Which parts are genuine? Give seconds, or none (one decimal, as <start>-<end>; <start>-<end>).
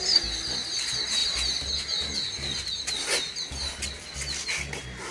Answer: 0.0-5.1